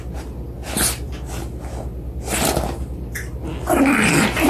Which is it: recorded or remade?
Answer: recorded